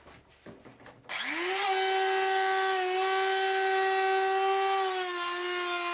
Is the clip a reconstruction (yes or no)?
no